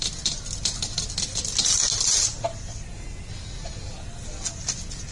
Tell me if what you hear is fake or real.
real